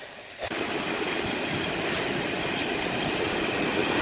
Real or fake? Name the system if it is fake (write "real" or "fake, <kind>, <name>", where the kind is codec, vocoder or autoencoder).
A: real